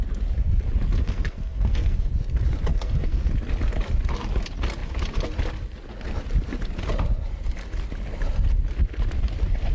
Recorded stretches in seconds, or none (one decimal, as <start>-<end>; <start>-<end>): 0.0-1.0; 2.1-2.7; 3.3-9.7

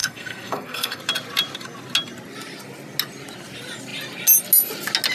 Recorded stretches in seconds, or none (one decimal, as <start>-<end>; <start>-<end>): 1.0-5.1

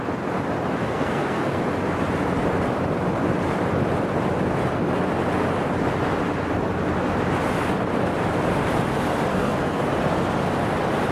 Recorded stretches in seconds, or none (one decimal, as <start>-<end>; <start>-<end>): 0.0-0.8; 1.6-9.3; 9.8-11.1